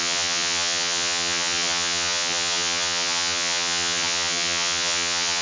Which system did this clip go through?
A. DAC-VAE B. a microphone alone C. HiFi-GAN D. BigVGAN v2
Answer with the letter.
C